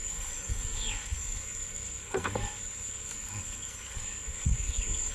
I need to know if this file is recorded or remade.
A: remade